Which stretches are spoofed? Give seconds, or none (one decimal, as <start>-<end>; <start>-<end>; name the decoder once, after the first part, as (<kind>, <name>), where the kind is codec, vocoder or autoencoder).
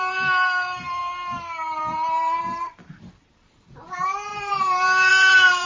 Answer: 0.0-1.0 (vocoder, BigVGAN v2); 1.8-5.7